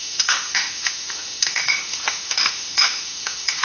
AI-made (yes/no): yes